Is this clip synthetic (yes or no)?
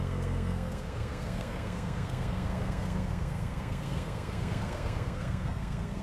yes